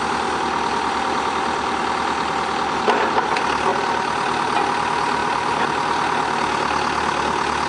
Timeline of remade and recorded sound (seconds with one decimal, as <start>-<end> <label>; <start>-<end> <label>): 0.0-3.7 recorded; 3.7-4.6 remade; 4.6-7.7 recorded